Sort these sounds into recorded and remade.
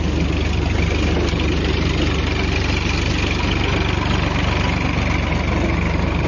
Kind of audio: recorded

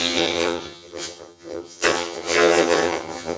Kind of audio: remade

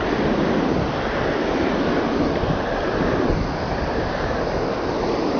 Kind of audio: recorded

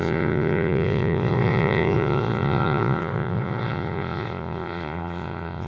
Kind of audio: remade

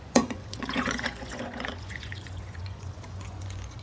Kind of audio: remade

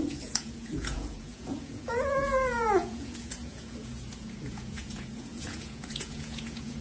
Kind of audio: remade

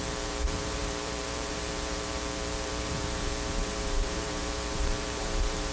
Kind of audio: remade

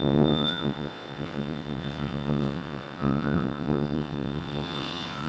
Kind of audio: remade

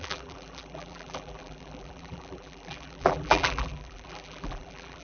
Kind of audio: remade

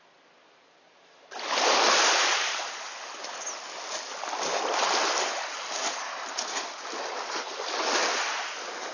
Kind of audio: recorded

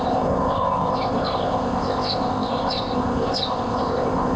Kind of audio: remade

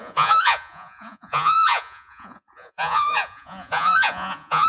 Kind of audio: remade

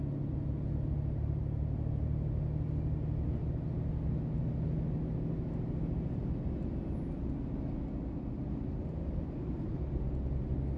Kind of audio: recorded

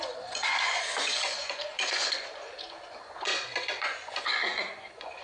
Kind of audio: remade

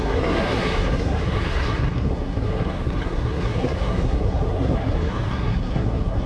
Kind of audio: remade